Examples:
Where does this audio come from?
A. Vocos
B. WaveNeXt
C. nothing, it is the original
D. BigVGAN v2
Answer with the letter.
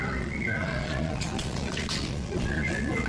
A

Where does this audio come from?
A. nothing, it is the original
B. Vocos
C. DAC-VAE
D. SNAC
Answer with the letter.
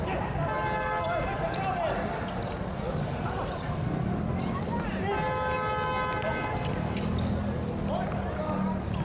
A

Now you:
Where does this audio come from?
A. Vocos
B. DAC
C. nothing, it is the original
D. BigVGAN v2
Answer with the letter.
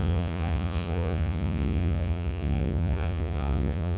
A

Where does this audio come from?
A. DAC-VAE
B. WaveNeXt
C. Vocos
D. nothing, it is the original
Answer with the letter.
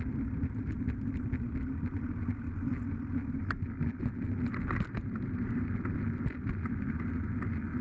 D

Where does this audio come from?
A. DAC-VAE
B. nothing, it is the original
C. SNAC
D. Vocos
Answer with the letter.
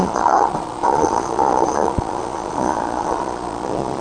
D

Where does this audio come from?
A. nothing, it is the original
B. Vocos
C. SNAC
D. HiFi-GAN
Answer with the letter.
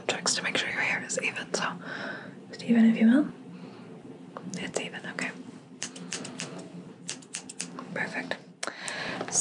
A